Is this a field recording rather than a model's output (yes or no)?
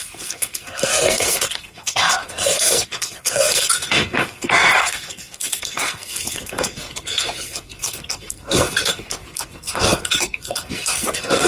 no